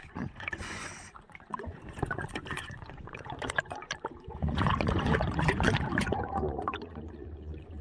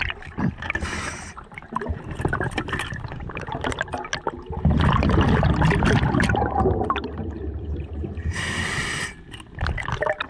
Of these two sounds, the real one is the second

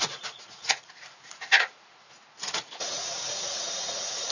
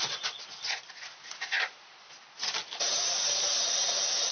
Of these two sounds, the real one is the second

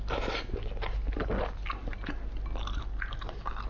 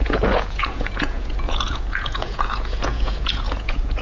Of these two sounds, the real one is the first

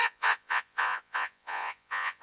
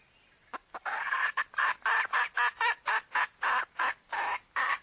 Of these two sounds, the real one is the second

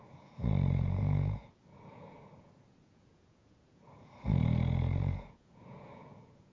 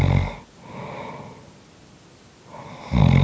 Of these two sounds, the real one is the second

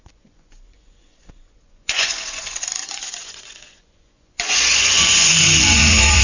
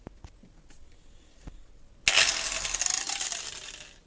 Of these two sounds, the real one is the second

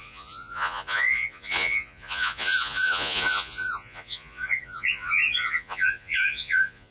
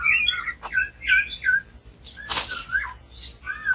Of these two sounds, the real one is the second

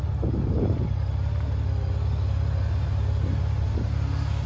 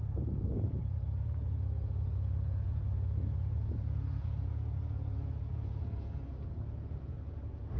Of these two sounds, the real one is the first